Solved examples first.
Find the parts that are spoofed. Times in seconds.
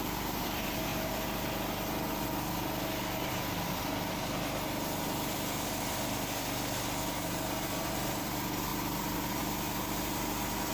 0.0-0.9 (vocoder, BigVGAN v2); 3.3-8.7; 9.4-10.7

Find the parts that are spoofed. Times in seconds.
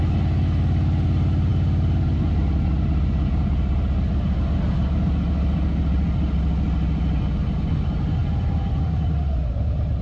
none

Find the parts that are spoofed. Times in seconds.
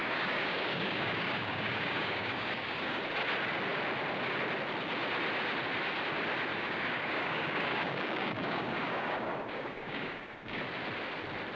0.0-3.0 (codec, DAC); 6.5-10.6